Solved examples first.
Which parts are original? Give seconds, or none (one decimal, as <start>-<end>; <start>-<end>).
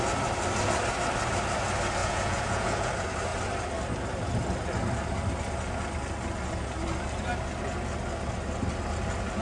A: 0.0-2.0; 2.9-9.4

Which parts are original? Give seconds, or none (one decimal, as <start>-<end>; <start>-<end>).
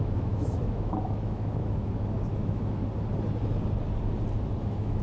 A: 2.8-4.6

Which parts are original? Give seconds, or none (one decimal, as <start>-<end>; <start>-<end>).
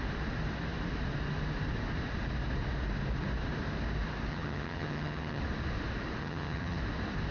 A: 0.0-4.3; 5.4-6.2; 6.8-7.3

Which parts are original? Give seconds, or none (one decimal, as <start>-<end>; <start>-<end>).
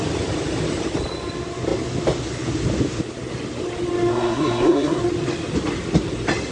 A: 0.0-4.1; 5.0-6.5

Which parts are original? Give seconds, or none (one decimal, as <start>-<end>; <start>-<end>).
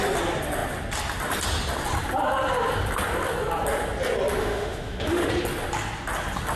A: 0.0-4.4; 5.3-6.6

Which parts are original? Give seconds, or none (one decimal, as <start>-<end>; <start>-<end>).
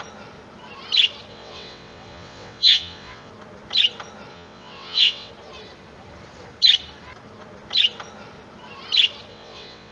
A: 0.0-1.3; 3.3-4.3; 5.3-9.3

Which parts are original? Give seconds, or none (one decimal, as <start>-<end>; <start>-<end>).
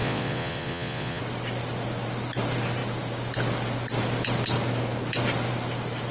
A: 1.2-6.1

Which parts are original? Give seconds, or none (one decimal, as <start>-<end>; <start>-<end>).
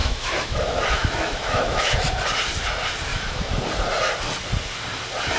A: 2.0-3.1; 3.6-5.4